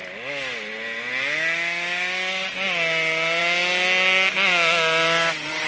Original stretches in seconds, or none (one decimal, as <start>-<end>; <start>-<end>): 0.0-5.7